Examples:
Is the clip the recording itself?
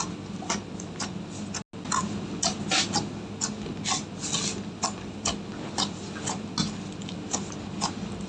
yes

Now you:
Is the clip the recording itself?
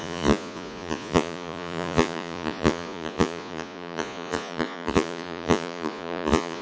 no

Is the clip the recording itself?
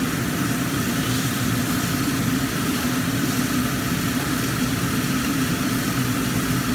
no